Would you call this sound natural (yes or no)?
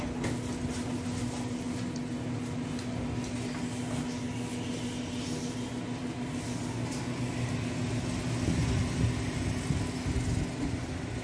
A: yes